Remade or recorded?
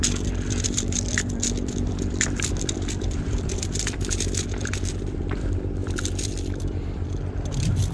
remade